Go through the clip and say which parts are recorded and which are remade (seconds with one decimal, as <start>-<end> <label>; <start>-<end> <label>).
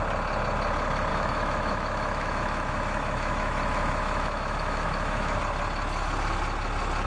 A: 0.0-1.1 recorded; 1.1-5.4 remade; 5.4-7.1 recorded